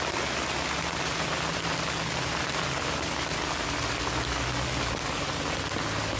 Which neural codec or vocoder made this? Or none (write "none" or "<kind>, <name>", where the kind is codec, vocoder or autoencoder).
none